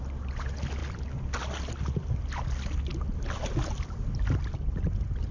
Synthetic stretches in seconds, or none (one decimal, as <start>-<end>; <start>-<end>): none